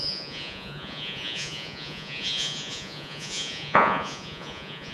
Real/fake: fake